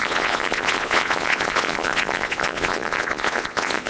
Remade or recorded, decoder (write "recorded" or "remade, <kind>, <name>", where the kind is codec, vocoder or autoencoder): remade, vocoder, Vocos